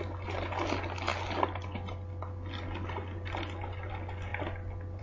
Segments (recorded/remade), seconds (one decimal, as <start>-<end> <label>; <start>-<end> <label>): 0.0-5.0 recorded